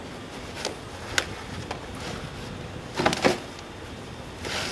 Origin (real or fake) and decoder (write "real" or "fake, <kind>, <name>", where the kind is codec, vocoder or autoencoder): real